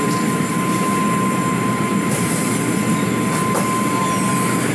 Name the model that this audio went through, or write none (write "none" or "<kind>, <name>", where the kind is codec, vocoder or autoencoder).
none